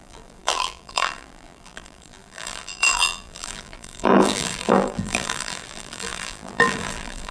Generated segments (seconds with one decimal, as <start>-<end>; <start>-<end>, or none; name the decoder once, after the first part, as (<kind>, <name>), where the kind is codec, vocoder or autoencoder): 0.0-7.3 (vocoder, BigVGAN v2)